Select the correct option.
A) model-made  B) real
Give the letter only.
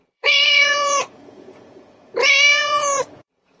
A